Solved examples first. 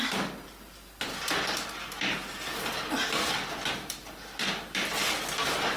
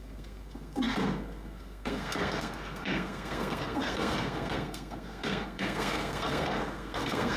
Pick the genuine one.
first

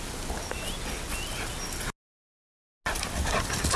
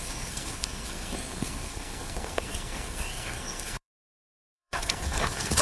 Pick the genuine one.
first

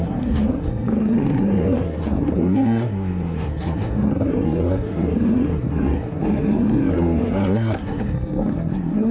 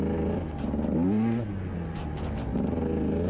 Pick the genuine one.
second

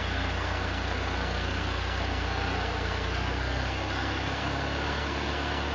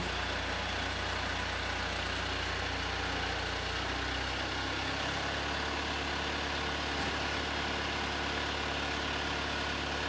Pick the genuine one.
second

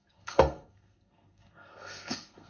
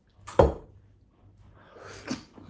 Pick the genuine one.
second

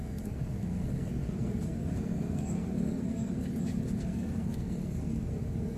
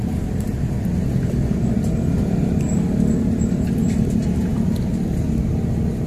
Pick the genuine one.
second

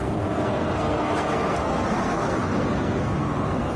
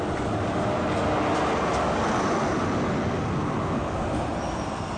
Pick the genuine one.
second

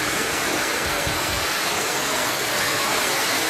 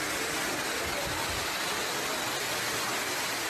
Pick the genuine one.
second